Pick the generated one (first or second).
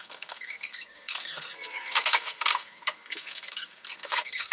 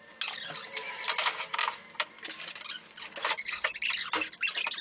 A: first